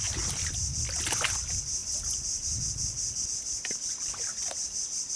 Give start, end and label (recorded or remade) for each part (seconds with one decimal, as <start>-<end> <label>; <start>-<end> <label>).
0.0-5.2 recorded